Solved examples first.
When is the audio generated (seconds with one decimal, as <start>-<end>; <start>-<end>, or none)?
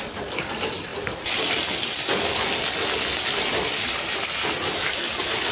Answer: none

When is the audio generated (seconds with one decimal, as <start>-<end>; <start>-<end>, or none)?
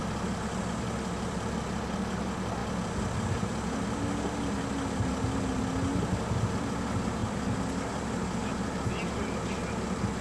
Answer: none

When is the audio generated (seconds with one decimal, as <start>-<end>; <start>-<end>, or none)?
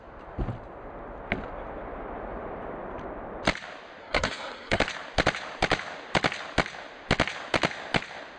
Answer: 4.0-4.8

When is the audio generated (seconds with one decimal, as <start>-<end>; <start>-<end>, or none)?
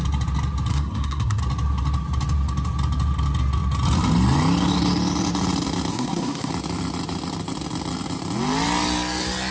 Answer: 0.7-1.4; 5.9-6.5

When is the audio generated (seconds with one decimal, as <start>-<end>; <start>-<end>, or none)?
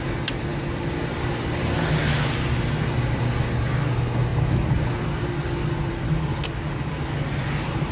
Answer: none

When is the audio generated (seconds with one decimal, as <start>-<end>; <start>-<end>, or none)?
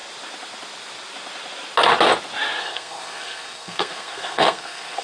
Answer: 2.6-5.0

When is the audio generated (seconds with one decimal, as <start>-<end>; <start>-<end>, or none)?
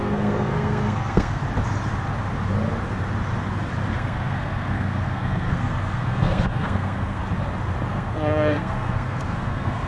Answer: 0.0-1.4; 3.9-7.2; 7.9-9.9